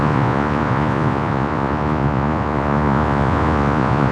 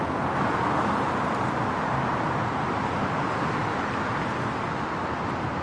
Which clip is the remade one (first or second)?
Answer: first